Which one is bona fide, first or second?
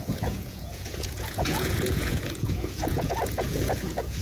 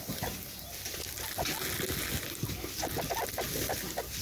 second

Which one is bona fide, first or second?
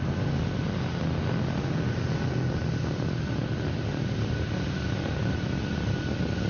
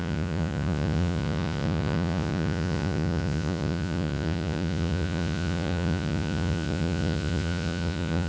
first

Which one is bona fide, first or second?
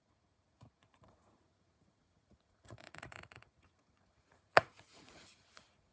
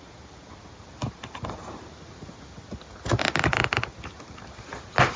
second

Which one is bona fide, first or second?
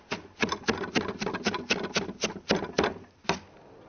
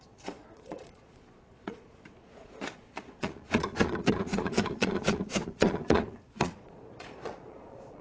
first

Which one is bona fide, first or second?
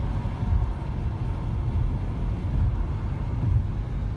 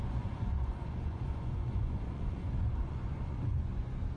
first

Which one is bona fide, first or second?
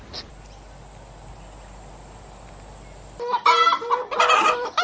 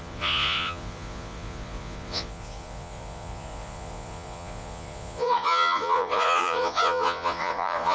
first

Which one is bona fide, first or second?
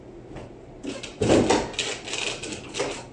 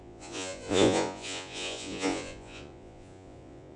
first